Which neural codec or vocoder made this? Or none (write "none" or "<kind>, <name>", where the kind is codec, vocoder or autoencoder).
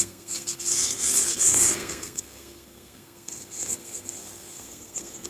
codec, SNAC